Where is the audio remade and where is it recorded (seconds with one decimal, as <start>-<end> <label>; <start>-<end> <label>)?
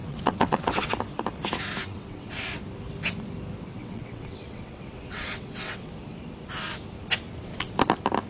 0.0-0.9 remade; 0.9-1.8 recorded; 1.8-2.6 remade; 2.6-3.7 recorded; 3.7-5.9 remade; 5.9-8.3 recorded